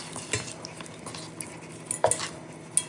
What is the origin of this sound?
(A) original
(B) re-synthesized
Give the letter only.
A